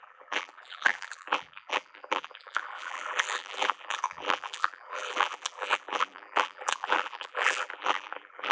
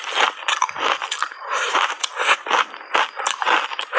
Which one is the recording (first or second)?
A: second